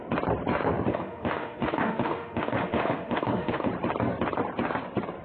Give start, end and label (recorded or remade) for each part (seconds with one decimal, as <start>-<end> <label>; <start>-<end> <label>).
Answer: 0.0-0.9 recorded; 0.9-3.7 remade; 3.7-5.2 recorded